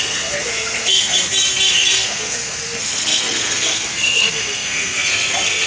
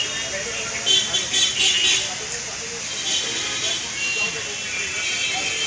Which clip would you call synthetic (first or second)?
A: first